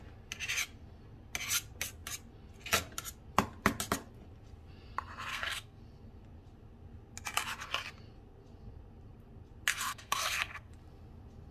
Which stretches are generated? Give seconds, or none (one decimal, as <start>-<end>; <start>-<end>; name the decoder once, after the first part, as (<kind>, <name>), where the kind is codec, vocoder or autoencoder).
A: 5.3-5.8 (codec, SNAC); 9.7-10.7